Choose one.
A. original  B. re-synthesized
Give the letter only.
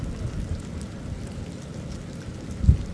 A